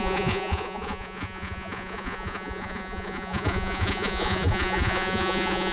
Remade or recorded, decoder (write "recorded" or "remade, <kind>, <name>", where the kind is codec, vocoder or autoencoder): remade, vocoder, Vocos